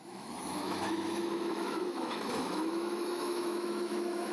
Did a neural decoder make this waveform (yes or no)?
yes